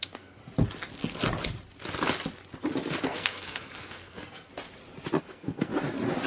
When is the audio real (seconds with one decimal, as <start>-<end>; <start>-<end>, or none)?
0.4-3.0; 4.5-5.2; 5.7-6.3